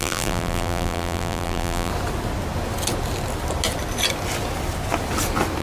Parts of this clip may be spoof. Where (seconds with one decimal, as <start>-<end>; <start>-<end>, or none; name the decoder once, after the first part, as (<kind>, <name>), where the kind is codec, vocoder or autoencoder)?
0.0-1.9 (vocoder, BigVGAN v2)

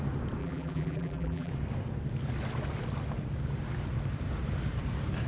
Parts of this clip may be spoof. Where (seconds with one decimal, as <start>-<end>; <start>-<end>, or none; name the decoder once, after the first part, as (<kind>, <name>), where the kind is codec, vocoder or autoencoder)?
0.4-1.5 (vocoder, BigVGAN v2)

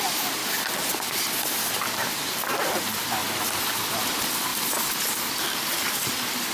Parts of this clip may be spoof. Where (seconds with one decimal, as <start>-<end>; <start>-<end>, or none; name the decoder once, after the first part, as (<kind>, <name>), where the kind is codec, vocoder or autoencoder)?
4.5-5.2 (vocoder, BigVGAN v2)

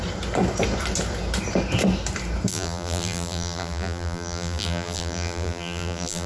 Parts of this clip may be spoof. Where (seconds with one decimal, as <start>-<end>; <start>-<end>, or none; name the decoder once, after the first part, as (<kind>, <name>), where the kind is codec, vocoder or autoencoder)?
2.5-6.3 (vocoder, BigVGAN v2)